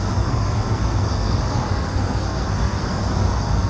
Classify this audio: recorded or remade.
remade